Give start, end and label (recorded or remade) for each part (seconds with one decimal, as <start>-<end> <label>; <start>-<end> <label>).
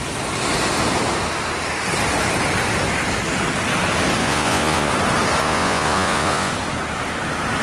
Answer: 0.0-4.2 recorded; 4.2-4.9 remade; 4.9-5.4 recorded; 5.4-6.5 remade; 6.5-7.6 recorded